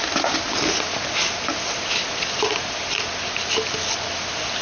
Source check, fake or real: real